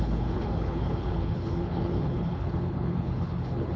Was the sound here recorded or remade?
remade